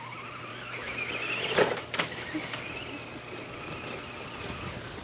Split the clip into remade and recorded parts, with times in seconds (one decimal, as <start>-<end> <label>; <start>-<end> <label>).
0.0-5.0 recorded